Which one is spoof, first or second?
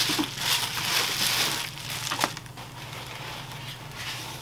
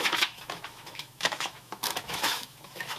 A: second